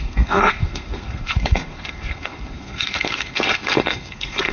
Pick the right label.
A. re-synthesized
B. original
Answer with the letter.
A